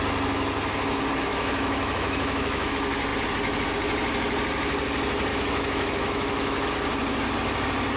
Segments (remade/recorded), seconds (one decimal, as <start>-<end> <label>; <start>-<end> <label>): 0.0-1.3 recorded; 1.3-2.7 remade; 2.7-5.3 recorded; 5.3-6.7 remade; 6.7-8.0 recorded